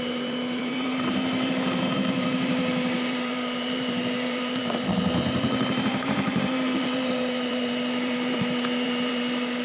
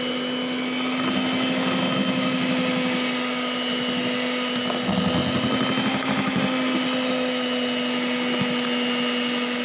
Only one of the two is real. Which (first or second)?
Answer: second